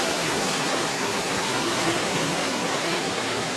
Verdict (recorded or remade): remade